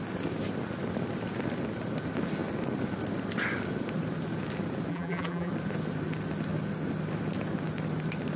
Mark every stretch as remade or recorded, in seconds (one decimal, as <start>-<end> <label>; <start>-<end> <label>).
0.0-4.9 recorded; 4.9-5.5 remade; 5.5-8.4 recorded